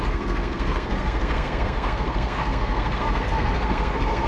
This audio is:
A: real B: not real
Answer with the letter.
B